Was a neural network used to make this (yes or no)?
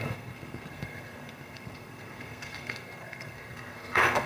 yes